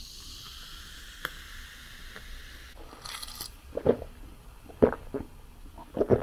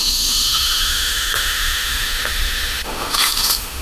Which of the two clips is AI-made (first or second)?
second